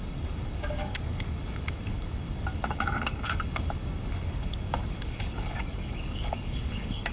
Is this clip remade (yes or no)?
yes